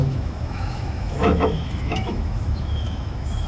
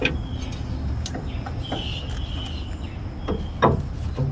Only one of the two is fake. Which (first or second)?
first